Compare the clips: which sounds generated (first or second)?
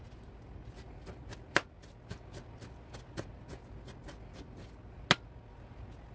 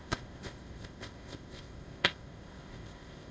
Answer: second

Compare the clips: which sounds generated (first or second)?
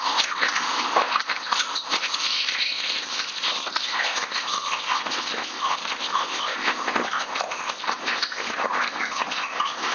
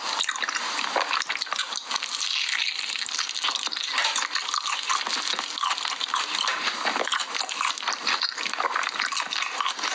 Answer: first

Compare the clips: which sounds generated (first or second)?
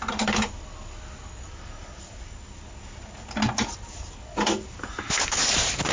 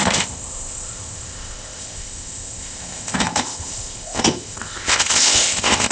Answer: second